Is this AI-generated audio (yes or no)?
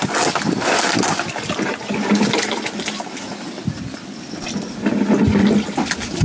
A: no